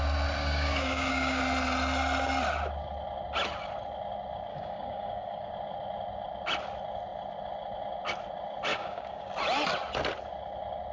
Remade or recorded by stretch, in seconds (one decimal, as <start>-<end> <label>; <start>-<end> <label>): 0.0-0.4 recorded; 0.4-1.4 remade; 1.4-4.5 recorded; 4.5-5.5 remade; 5.5-8.7 recorded; 8.7-9.3 remade; 9.3-10.9 recorded